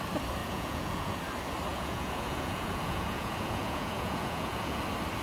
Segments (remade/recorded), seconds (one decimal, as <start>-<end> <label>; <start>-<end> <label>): 0.0-0.4 recorded; 0.4-1.2 remade; 1.2-1.7 recorded; 1.7-4.8 remade; 4.8-5.2 recorded